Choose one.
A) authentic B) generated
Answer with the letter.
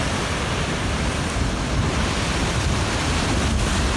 A